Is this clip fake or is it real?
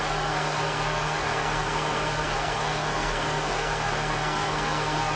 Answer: fake